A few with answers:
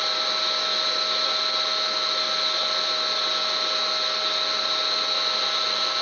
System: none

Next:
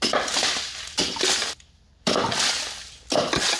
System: none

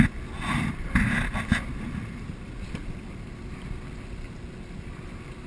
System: none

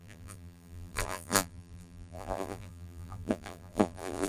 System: vocoder, BigVGAN v2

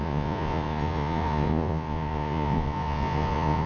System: vocoder, Vocos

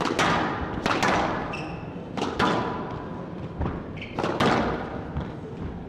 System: none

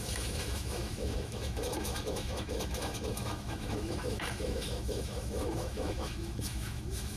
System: autoencoder, DAC-VAE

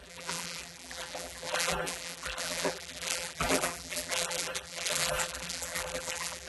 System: vocoder, BigVGAN v2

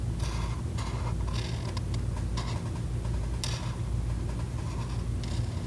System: none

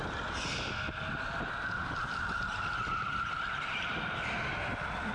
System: none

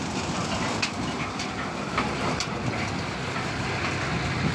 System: none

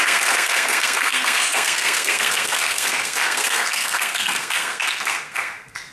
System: codec, SNAC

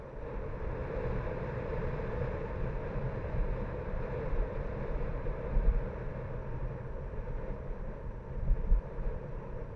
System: vocoder, BigVGAN v2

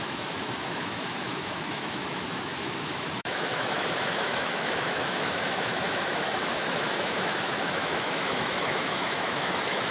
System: autoencoder, DAC-VAE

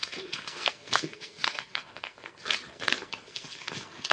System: codec, SNAC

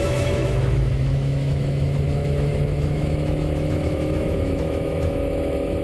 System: autoencoder, DAC-VAE